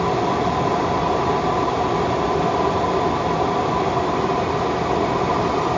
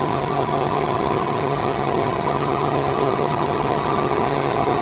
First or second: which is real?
first